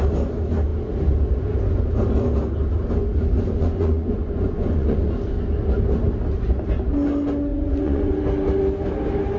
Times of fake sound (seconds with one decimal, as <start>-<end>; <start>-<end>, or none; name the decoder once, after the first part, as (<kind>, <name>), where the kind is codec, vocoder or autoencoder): 3.6-5.0 (vocoder, Vocos); 7.5-8.2